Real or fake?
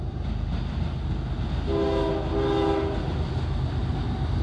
real